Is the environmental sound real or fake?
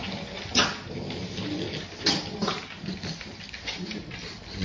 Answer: real